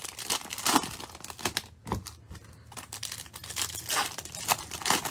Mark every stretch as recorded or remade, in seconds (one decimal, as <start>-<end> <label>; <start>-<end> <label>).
0.0-5.1 recorded

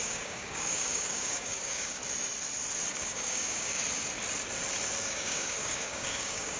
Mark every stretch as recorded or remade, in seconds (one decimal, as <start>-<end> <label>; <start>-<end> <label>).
0.0-2.0 remade; 2.0-2.9 recorded; 2.9-3.8 remade; 3.8-5.0 recorded; 5.0-6.6 remade

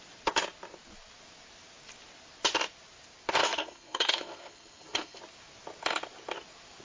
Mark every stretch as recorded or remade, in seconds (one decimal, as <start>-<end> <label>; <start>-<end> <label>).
0.0-3.4 recorded; 3.4-5.2 remade; 5.2-6.8 recorded

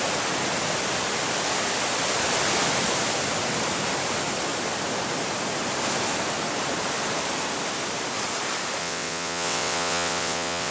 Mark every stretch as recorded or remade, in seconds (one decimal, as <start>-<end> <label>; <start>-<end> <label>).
0.0-8.8 recorded; 8.8-10.7 remade

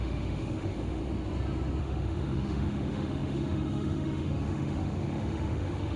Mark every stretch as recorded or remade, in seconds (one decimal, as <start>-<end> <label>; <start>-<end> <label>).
0.0-1.0 remade; 1.0-1.8 recorded; 1.8-6.0 remade